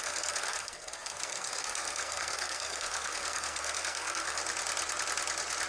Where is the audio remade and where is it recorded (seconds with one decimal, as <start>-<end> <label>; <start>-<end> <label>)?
0.0-4.4 remade; 4.4-5.7 recorded